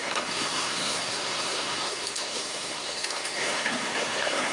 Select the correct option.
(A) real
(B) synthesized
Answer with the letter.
B